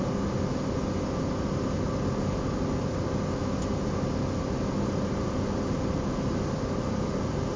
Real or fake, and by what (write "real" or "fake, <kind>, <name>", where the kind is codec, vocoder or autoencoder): real